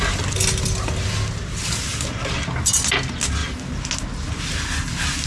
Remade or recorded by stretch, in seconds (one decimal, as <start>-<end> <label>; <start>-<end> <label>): 0.0-5.3 recorded

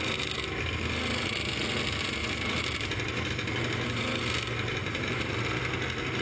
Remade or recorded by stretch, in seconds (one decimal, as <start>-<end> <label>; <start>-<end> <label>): 0.0-2.2 recorded; 2.2-3.3 remade; 3.3-4.8 recorded; 4.8-5.4 remade; 5.4-6.2 recorded

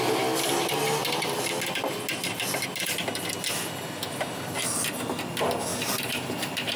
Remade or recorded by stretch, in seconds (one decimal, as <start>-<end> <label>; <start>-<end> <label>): 0.0-5.7 recorded; 5.7-6.8 remade

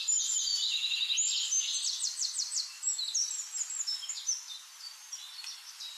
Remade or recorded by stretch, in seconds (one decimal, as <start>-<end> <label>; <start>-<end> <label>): 0.0-0.5 remade; 0.5-4.1 recorded; 4.1-6.0 remade